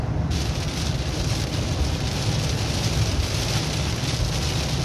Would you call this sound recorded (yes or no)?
yes